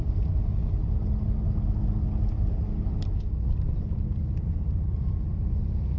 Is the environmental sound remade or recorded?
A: recorded